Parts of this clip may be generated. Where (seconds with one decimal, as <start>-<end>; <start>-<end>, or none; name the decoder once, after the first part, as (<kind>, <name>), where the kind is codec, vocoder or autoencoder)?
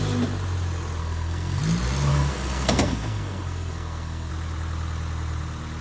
1.0-1.6 (codec, SNAC); 2.1-4.3